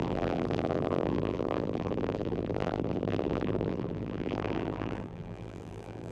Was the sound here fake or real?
fake